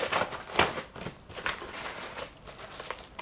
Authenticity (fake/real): real